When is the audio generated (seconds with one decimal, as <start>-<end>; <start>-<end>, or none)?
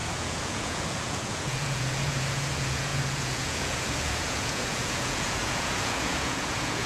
0.0-6.9